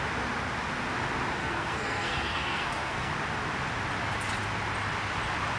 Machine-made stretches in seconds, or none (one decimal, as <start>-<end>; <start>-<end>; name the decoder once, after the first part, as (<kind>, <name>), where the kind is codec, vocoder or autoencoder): 1.4-3.1 (codec, SNAC)